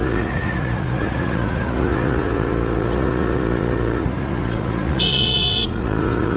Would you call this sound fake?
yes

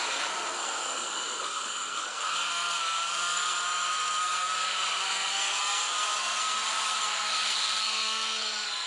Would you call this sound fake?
yes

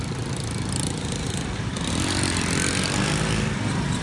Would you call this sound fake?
no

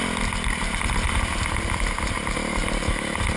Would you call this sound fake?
no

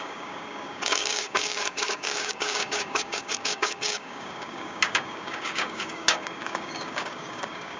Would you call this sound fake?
yes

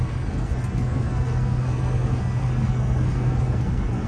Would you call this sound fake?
yes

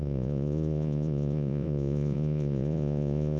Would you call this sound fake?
yes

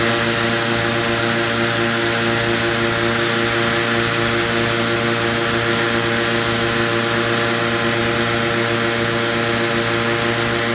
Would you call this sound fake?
no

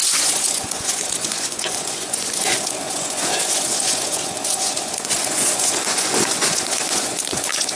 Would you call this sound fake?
yes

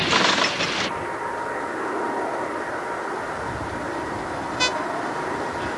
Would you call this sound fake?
no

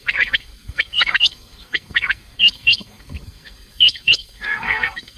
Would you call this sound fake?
yes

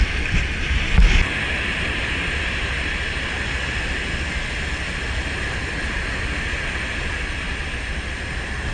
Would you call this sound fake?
no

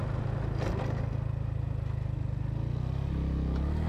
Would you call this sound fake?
no